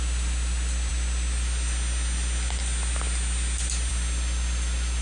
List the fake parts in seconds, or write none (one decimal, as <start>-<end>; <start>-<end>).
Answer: none